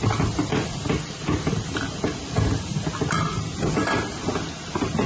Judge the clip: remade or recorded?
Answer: recorded